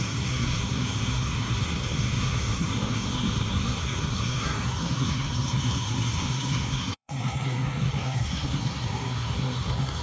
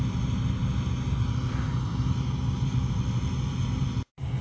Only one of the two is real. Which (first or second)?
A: second